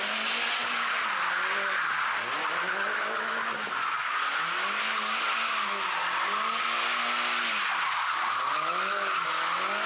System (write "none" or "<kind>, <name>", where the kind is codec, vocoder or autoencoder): none